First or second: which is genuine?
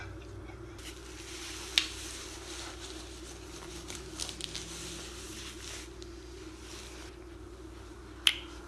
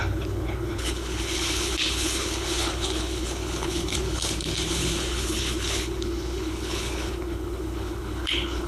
first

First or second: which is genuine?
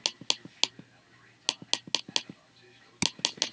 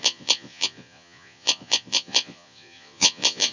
first